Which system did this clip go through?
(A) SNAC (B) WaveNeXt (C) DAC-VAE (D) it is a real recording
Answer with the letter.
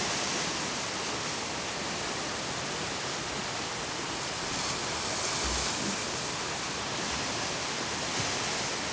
D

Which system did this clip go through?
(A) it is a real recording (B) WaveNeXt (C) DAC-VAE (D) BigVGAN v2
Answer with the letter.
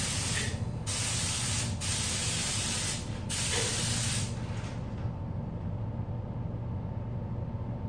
A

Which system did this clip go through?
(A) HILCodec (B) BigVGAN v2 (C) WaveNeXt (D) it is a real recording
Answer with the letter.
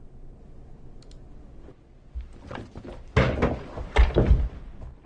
D